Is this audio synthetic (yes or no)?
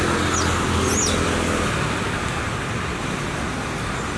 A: no